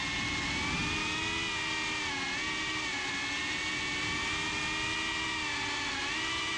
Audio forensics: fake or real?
real